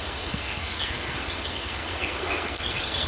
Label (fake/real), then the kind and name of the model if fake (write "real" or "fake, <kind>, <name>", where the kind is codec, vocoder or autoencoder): fake, codec, SNAC